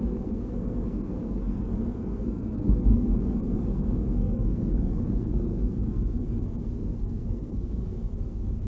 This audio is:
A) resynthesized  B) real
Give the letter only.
A